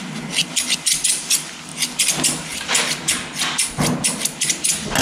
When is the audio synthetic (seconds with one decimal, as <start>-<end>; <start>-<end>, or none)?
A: none